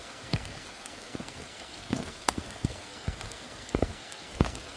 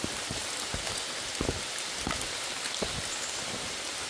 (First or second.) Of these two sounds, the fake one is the first